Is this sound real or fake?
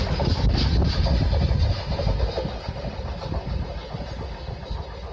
real